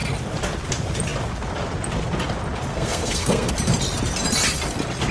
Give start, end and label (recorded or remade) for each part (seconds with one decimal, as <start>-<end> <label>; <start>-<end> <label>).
0.0-2.7 recorded; 2.7-3.5 remade; 3.5-5.1 recorded